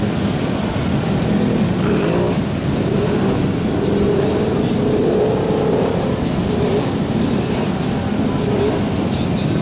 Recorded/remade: recorded